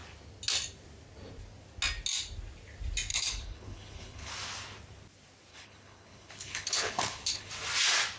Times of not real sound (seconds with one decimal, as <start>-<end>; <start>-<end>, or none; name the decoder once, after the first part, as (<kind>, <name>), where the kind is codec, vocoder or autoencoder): 3.1-4.3 (codec, HILCodec); 5.5-7.5